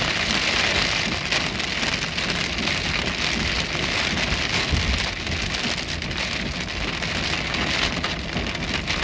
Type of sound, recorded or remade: recorded